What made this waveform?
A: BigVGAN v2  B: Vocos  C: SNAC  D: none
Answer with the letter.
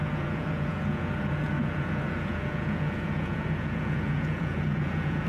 B